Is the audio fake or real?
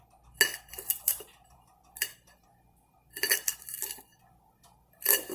fake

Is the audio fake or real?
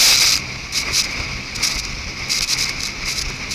real